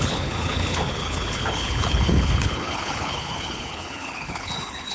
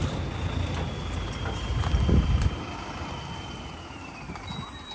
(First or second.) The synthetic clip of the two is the first